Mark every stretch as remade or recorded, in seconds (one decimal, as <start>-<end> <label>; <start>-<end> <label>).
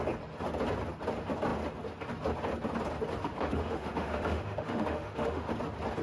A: 0.0-3.5 recorded; 3.5-5.5 remade; 5.5-6.0 recorded